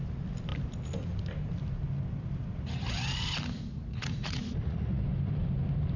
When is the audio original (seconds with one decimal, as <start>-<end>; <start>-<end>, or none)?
0.0-3.9; 5.0-6.0